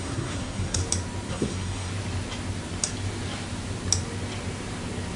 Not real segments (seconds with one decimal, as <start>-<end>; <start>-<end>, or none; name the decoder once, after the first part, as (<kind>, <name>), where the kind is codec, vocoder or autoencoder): 0.0-0.8 (codec, SNAC); 1.3-1.9